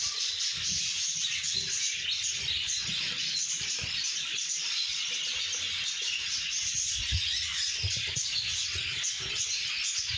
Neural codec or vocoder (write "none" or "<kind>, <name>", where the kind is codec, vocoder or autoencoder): none